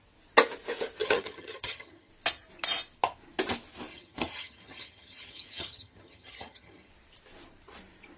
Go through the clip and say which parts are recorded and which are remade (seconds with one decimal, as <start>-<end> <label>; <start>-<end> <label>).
0.0-1.0 recorded; 1.0-2.1 remade; 2.1-3.9 recorded; 3.9-6.9 remade; 6.9-8.2 recorded